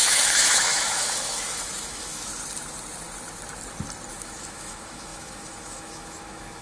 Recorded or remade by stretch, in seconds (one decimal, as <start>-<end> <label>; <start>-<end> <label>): 0.0-2.3 remade; 2.3-4.1 recorded; 4.1-6.6 remade